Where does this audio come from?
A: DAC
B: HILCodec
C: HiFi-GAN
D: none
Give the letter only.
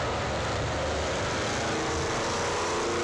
D